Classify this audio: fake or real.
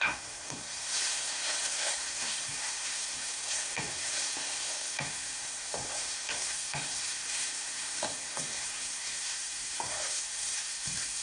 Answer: fake